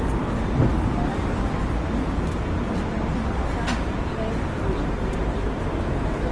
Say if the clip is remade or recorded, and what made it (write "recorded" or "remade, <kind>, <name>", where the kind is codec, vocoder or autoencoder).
recorded